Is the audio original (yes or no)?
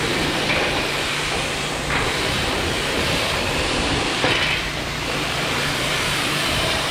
no